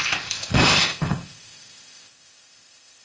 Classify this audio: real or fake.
fake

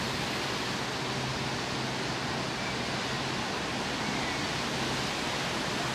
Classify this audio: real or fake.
real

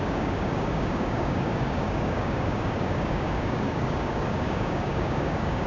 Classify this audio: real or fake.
fake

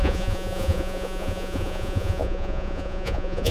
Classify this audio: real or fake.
fake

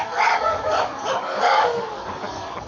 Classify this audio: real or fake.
fake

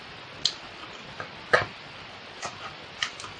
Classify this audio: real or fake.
real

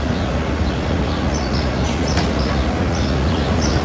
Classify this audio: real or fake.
fake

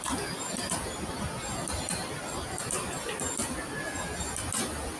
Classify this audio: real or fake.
real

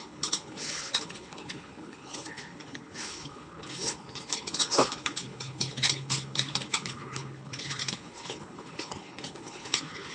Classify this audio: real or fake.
fake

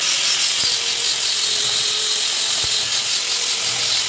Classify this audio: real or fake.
real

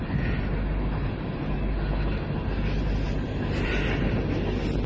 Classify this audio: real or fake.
real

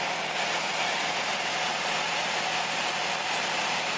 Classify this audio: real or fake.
real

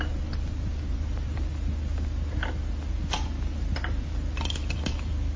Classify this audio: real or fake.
real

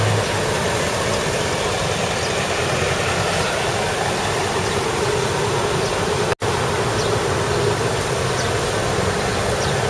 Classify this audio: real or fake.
real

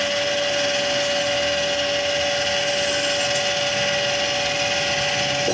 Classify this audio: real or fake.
real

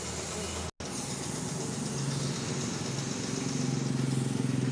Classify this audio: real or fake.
real